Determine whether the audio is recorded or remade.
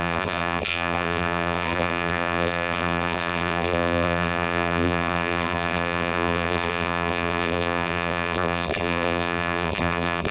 remade